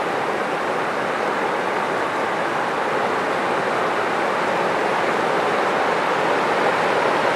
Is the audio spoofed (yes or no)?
no